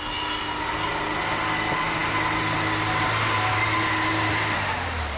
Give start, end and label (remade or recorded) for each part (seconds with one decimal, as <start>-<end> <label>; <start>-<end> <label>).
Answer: 0.0-5.2 recorded